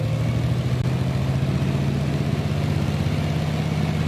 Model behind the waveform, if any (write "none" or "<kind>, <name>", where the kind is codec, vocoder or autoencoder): none